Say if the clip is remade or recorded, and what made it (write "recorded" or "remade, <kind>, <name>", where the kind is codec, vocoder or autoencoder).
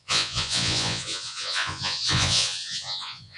remade, vocoder, Vocos